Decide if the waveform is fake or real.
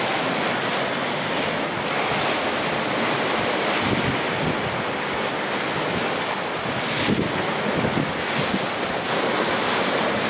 real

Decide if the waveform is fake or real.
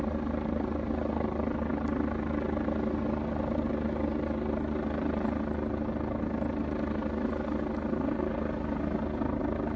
real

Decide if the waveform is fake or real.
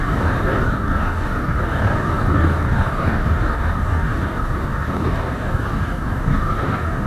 fake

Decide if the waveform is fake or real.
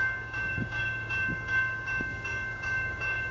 fake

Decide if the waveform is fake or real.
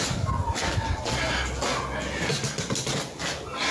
real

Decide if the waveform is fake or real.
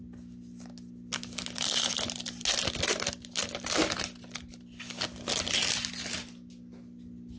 real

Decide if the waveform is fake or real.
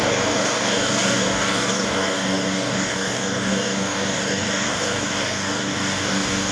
fake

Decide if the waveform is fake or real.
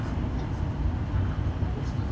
real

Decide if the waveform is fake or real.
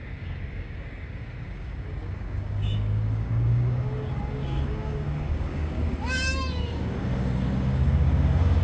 fake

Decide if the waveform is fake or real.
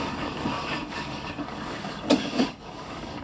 fake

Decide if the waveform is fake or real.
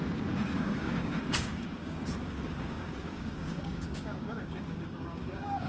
fake